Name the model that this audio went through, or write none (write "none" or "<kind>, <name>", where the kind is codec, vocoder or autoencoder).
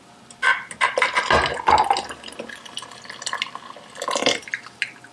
none